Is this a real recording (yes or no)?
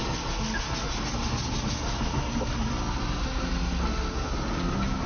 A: yes